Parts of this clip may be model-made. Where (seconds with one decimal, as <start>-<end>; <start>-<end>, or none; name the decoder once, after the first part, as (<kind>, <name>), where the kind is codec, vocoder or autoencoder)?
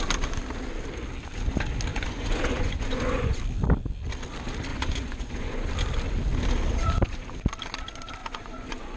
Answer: 1.9-3.4 (vocoder, Vocos); 4.7-5.7; 8.2-9.0